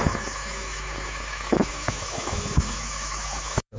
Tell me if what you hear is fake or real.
fake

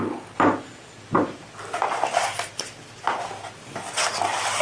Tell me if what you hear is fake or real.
real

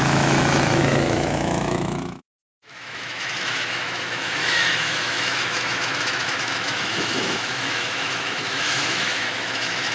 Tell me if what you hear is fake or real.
fake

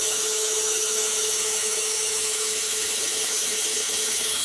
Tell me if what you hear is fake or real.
fake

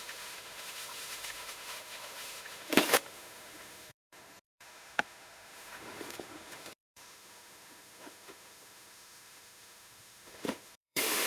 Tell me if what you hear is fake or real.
fake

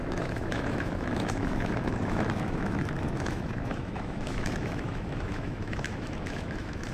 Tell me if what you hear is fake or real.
fake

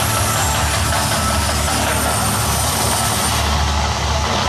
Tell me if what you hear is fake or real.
real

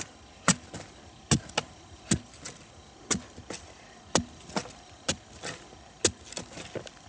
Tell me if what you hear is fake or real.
real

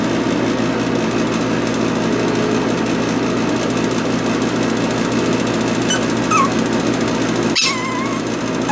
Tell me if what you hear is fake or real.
real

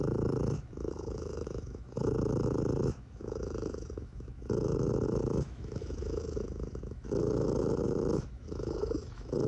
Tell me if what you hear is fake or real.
fake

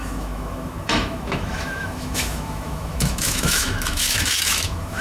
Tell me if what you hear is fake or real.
fake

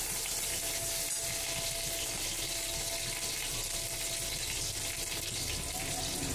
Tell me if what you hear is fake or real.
real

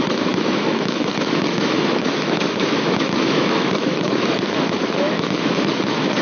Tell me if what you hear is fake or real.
fake